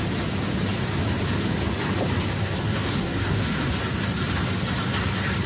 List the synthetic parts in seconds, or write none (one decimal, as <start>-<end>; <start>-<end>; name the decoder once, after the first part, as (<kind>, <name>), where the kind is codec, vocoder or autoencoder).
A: 2.4-3.7 (codec, SNAC)